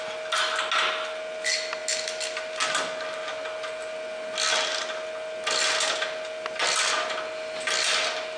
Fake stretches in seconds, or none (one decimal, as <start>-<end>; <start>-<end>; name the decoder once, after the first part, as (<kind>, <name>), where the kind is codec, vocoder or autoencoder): none